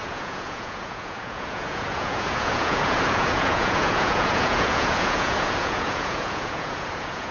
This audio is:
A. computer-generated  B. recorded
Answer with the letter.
A